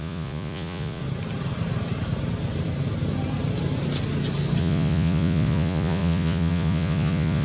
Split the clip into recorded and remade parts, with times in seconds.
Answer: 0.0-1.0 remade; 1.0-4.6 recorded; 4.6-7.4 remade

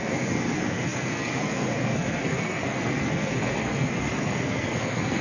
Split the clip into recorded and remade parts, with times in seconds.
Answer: 0.0-5.2 remade

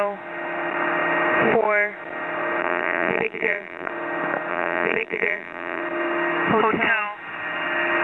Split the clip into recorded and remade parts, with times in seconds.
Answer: 0.0-2.6 recorded; 2.6-3.9 remade; 3.9-4.5 recorded; 4.5-5.8 remade; 5.8-8.0 recorded

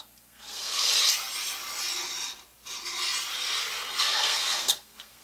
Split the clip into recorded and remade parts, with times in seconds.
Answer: 0.0-0.9 remade; 0.9-4.0 recorded; 4.0-5.2 remade

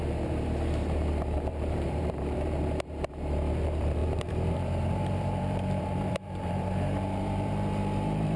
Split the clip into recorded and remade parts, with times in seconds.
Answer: 0.0-8.4 remade

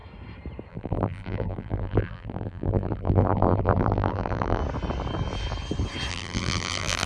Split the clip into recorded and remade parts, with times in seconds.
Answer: 0.0-0.7 recorded; 0.7-4.6 remade; 4.6-6.1 recorded; 6.1-7.1 remade

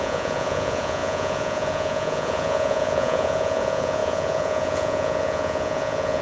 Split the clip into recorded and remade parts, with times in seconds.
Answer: 0.0-6.2 remade

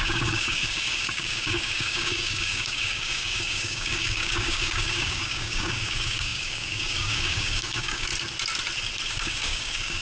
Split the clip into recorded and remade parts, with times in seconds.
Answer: 0.0-8.1 remade; 8.1-9.1 recorded; 9.1-10.0 remade